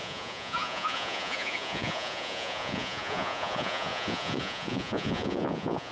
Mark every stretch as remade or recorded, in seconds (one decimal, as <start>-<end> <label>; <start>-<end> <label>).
0.0-5.9 remade